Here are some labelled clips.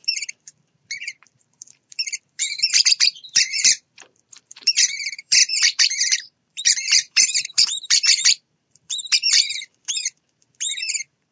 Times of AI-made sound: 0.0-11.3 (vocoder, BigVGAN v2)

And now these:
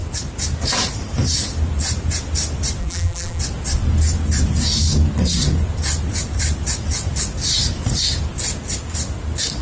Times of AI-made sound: 2.8-3.4 (vocoder, BigVGAN v2)